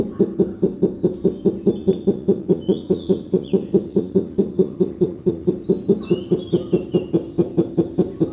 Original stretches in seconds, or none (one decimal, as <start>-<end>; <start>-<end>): 0.0-1.8; 5.5-8.3